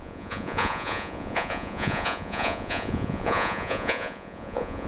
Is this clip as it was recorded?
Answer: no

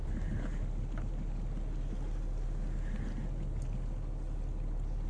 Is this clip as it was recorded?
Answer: yes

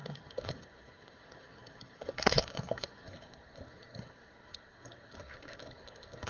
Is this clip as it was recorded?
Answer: no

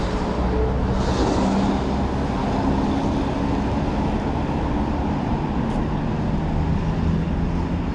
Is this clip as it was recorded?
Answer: yes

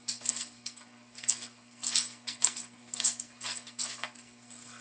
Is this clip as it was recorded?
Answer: no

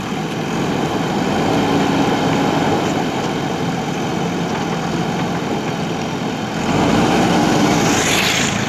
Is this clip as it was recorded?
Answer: yes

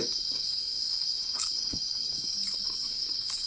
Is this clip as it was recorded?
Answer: no